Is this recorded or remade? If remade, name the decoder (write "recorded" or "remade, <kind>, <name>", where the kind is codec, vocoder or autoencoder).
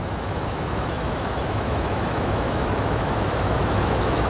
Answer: remade, autoencoder, DAC-VAE